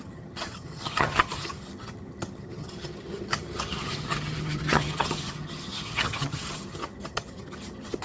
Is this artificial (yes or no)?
yes